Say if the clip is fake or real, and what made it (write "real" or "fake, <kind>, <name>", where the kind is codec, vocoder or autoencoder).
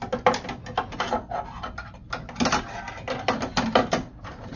real